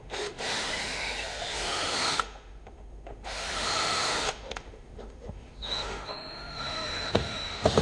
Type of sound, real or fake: fake